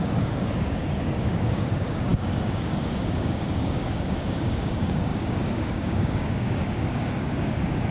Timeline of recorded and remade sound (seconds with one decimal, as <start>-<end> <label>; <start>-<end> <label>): 0.0-7.9 remade